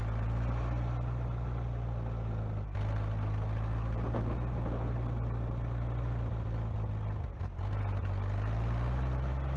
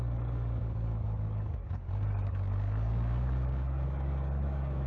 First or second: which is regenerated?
second